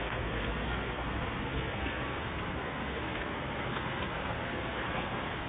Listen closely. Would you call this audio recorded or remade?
remade